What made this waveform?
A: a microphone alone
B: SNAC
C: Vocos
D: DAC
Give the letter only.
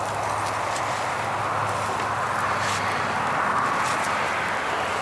A